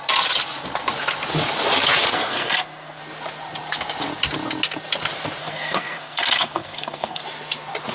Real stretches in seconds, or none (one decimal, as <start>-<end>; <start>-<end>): 0.0-2.1; 3.0-5.4; 7.2-7.9